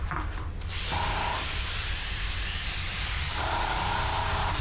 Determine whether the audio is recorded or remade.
remade